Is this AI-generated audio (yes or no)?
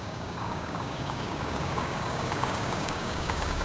yes